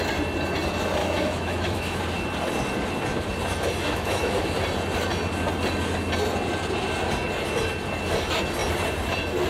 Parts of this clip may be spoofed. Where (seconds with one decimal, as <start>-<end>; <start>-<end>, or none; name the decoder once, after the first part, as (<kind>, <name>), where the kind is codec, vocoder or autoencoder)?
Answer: 1.0-2.0 (autoencoder, DAC-VAE); 3.8-4.5